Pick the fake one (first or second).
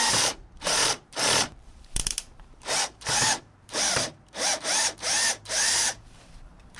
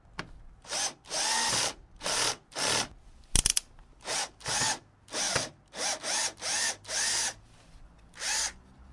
first